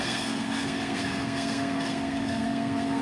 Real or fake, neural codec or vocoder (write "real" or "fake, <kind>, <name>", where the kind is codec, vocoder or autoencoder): fake, codec, SNAC